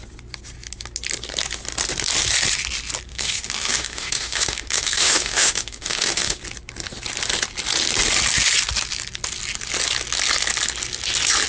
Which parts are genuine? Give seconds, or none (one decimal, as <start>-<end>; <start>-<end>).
0.0-3.1; 6.4-11.5